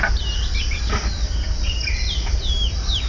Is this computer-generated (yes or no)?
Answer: no